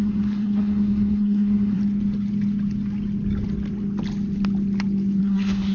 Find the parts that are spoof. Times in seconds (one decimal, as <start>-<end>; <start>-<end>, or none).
0.0-1.8; 5.2-5.7